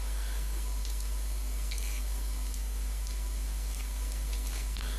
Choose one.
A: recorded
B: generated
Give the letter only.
B